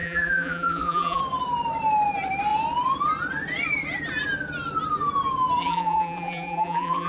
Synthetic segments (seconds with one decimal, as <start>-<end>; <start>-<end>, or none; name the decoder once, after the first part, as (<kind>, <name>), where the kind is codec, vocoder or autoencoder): 0.0-1.2 (vocoder, BigVGAN v2); 5.6-7.1